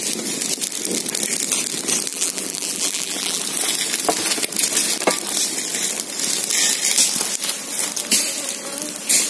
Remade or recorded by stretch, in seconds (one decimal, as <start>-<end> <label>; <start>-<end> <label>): 0.0-2.1 recorded; 2.1-3.4 remade; 3.4-9.3 recorded